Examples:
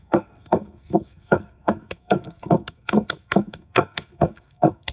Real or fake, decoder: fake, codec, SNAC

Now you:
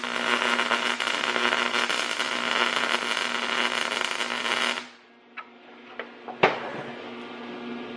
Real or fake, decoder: real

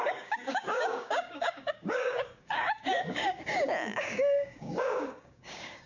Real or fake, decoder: fake, codec, DAC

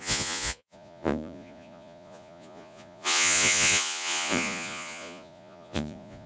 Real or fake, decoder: fake, vocoder, Vocos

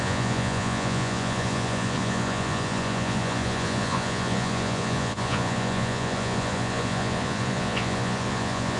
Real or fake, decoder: fake, vocoder, Vocos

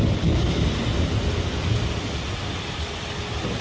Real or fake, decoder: real